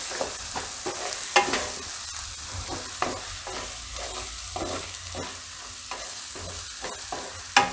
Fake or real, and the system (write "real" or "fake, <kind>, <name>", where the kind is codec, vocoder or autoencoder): real